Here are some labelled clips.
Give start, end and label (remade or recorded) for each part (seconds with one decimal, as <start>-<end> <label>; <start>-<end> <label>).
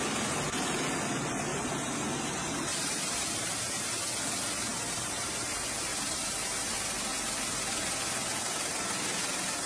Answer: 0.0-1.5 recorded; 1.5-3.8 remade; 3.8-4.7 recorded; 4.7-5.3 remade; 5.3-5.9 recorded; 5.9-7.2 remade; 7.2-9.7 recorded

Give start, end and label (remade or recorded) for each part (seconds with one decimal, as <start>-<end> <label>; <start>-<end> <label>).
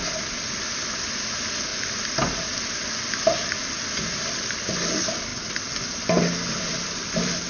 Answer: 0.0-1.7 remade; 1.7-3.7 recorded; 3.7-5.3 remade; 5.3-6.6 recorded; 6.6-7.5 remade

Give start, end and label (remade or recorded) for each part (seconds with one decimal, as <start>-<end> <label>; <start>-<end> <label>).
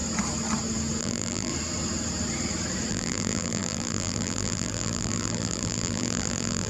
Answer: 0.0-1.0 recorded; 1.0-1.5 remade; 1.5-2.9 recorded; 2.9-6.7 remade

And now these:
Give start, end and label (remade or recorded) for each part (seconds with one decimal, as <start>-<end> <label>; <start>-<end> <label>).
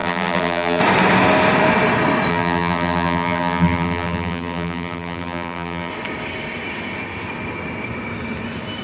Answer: 0.0-0.8 remade; 0.8-2.3 recorded; 2.3-5.9 remade; 5.9-8.8 recorded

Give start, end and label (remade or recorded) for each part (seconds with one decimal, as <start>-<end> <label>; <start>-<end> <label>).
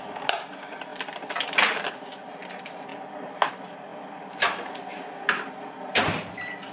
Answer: 0.0-0.9 remade; 0.9-2.3 recorded; 2.3-2.9 remade; 2.9-3.5 recorded; 3.5-6.7 remade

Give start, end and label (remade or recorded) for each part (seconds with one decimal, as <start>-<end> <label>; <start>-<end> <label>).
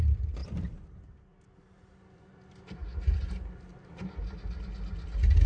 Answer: 0.0-5.5 recorded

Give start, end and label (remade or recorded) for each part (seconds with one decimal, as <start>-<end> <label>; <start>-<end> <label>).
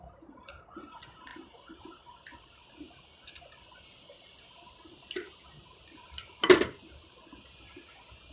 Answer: 0.0-1.3 recorded; 1.3-2.7 remade; 2.7-8.3 recorded